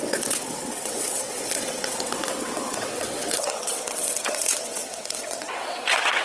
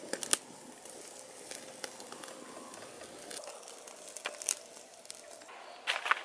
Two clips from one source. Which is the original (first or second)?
second